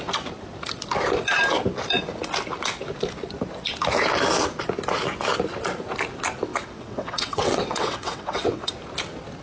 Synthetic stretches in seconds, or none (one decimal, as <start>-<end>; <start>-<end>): 6.5-8.7